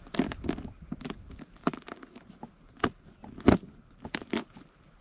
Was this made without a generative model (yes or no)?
yes